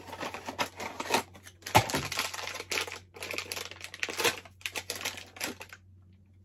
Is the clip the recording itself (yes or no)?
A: yes